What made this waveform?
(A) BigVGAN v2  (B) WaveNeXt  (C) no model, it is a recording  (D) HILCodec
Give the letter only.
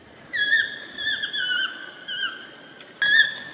C